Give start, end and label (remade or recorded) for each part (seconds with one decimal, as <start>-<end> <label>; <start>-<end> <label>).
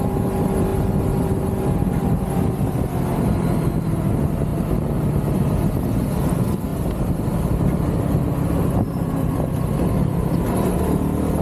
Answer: 0.0-11.4 recorded